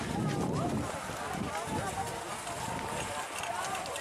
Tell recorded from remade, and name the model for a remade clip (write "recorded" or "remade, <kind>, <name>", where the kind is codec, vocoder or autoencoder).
recorded